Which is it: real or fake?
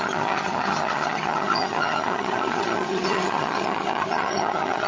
fake